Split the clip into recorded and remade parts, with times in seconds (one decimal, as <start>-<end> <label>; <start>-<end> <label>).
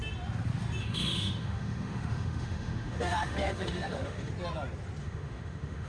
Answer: 0.0-0.8 recorded; 0.8-4.3 remade; 4.3-5.0 recorded; 5.0-5.9 remade